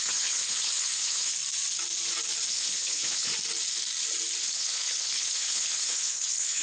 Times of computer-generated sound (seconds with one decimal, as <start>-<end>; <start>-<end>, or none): 0.0-1.3; 2.5-3.3; 4.4-6.6